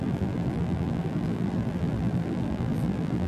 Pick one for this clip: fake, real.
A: fake